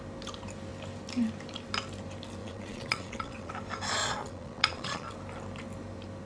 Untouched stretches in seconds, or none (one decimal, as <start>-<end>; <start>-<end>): 0.0-2.4; 3.5-4.0; 5.1-6.3